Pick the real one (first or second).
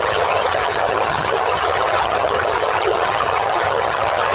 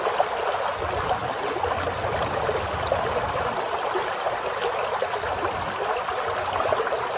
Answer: second